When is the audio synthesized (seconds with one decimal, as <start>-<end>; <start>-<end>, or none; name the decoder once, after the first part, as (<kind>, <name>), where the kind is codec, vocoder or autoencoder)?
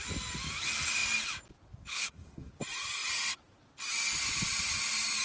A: 1.9-2.5 (codec, SNAC)